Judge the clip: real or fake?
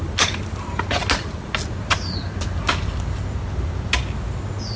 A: real